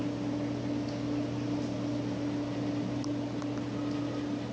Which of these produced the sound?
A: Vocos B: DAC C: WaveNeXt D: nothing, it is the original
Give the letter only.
D